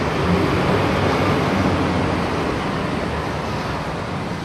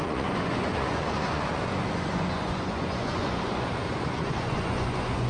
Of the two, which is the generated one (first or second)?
second